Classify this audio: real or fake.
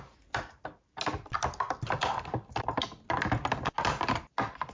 real